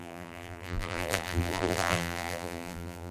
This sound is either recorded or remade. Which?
remade